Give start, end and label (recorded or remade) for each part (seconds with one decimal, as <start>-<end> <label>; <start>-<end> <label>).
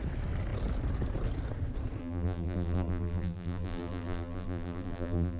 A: 0.0-2.0 recorded; 2.0-5.4 remade